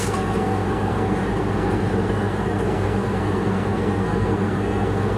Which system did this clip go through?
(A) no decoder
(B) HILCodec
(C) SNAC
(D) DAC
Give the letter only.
C